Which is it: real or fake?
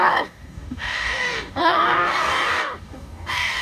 fake